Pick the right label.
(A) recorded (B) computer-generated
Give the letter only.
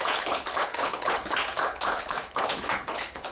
B